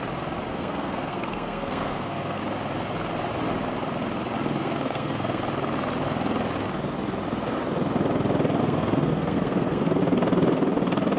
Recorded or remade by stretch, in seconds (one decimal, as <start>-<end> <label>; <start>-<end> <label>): 0.0-0.5 recorded; 0.5-2.4 remade; 2.4-4.6 recorded; 4.6-5.4 remade; 5.4-8.6 recorded; 8.6-10.0 remade; 10.0-11.2 recorded